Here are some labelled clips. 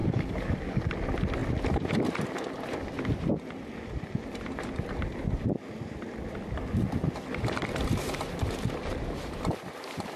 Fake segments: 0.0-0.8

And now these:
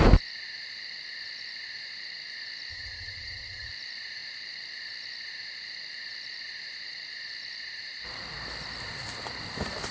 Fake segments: 2.7-3.7